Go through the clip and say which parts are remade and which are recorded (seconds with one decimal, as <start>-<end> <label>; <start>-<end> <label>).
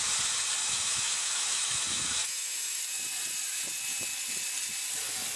0.0-0.6 recorded; 0.6-2.8 remade; 2.8-5.4 recorded